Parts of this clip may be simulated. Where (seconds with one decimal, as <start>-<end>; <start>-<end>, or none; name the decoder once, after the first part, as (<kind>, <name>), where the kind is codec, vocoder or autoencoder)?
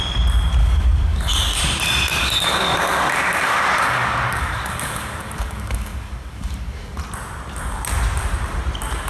0.6-1.6 (codec, DAC); 2.1-7.0